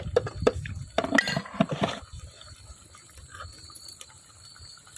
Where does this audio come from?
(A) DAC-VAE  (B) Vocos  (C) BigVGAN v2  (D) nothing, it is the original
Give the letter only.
D